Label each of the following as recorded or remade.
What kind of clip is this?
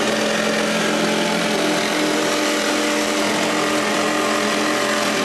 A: recorded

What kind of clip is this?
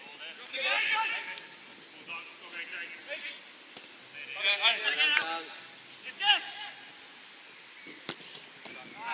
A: recorded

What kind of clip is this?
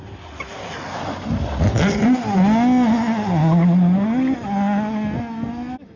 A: recorded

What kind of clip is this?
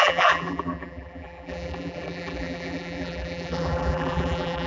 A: remade